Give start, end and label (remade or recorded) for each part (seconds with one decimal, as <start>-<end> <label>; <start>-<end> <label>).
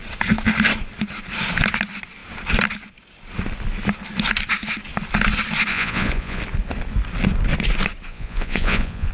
0.0-5.7 recorded; 5.7-6.4 remade; 6.4-8.1 recorded; 8.1-9.1 remade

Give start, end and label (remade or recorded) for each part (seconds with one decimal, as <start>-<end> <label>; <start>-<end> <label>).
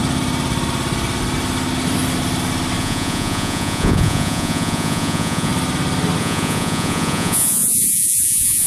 0.0-2.8 recorded; 2.8-5.5 remade; 5.5-6.2 recorded; 6.2-8.7 remade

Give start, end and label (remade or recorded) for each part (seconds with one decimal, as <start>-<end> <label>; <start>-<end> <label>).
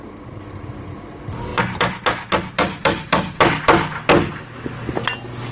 0.0-5.5 recorded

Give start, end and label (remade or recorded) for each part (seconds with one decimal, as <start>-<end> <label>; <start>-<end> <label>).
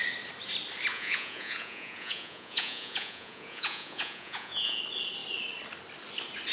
0.0-0.9 recorded; 0.9-4.8 remade; 4.8-6.5 recorded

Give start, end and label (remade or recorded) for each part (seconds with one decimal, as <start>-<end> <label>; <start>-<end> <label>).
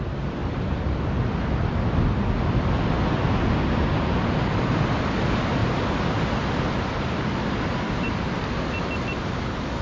0.0-9.8 recorded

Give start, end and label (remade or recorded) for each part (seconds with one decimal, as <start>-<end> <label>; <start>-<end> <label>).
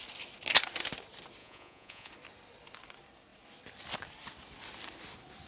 0.0-1.4 recorded; 1.4-2.1 remade; 2.1-5.5 recorded